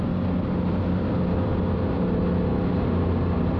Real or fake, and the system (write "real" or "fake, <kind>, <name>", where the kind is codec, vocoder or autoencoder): real